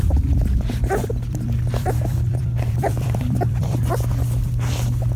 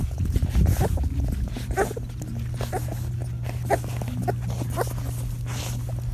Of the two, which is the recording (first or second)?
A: second